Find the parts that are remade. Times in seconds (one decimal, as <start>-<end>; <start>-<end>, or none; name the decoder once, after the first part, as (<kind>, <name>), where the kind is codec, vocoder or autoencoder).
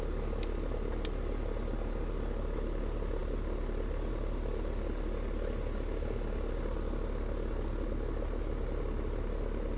none